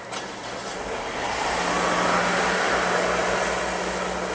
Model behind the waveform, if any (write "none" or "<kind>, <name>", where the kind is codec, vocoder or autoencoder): none